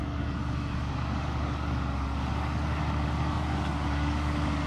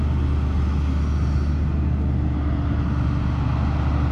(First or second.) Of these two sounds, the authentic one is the second